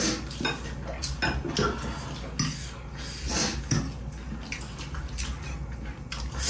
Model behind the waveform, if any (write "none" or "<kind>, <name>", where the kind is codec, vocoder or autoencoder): none